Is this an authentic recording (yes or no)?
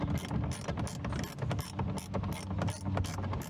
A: yes